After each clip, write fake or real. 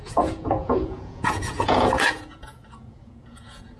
fake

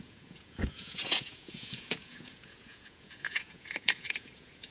fake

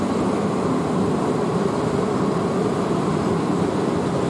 real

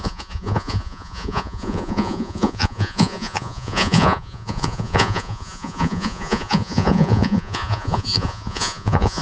fake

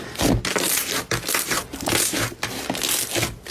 real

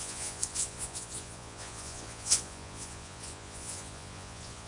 fake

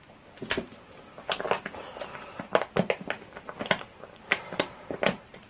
real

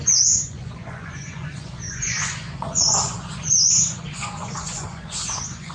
fake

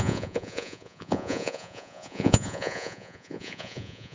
fake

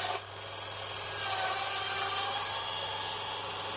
real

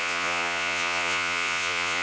fake